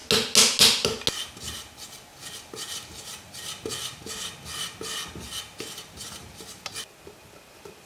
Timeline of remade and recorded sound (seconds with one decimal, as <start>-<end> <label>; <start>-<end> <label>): 0.0-7.9 recorded